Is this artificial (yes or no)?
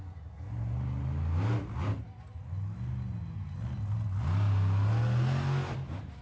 no